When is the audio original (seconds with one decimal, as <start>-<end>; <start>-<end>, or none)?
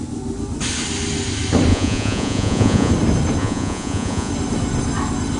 0.0-1.7; 2.9-3.4; 4.3-5.4